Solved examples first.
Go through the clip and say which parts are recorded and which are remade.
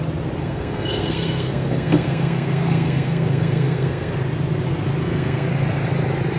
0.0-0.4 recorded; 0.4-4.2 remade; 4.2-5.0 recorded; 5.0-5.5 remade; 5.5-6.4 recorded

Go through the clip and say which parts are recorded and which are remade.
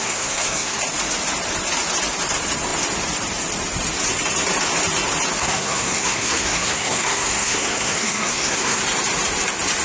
0.0-0.8 remade; 0.8-5.4 recorded; 5.4-8.8 remade; 8.8-9.8 recorded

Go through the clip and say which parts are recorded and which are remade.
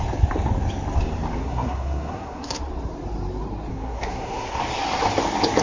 0.0-1.4 recorded; 1.4-2.6 remade; 2.6-3.7 recorded; 3.7-4.6 remade; 4.6-5.6 recorded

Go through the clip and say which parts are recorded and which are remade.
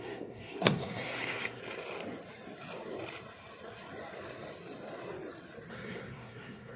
0.0-1.6 remade; 1.6-5.7 recorded; 5.7-6.8 remade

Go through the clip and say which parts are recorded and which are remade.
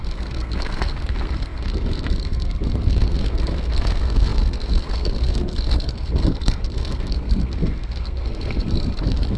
0.0-9.4 remade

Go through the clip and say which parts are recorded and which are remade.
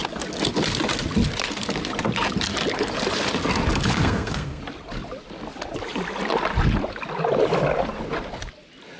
0.0-3.9 recorded; 3.9-4.6 remade; 4.6-9.0 recorded